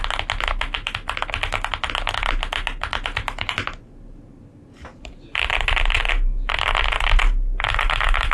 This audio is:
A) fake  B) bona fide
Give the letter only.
B